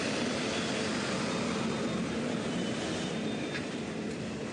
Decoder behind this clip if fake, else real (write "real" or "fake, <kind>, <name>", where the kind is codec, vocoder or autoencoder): real